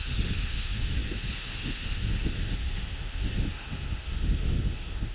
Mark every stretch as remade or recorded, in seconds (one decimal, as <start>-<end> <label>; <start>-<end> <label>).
0.0-5.1 remade